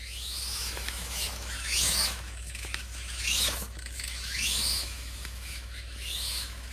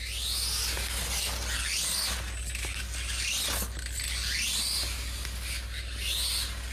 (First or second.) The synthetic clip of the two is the first